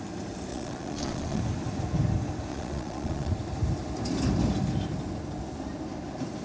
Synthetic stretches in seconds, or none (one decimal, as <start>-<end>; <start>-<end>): 0.5-1.4; 2.5-3.3